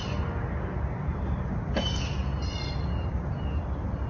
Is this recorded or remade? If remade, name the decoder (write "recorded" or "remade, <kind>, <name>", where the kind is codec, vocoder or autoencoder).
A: recorded